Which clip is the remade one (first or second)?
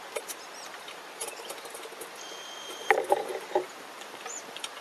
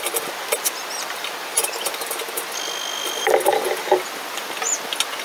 first